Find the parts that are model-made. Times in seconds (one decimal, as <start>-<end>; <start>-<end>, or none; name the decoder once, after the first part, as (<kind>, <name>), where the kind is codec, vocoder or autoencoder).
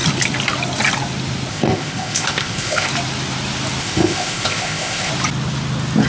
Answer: 1.5-2.9 (codec, ZipCodec); 3.8-5.1